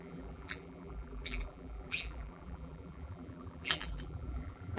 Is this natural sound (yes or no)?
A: no